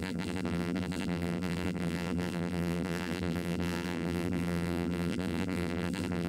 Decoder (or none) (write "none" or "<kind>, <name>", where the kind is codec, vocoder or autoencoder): vocoder, BigVGAN v2